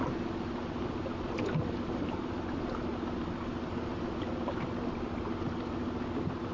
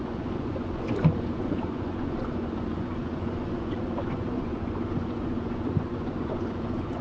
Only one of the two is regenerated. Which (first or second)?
second